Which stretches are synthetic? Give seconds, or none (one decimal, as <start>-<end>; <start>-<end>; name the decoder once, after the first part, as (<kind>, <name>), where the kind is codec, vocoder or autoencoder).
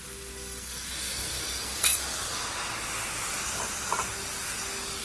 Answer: 0.0-2.0 (codec, SNAC)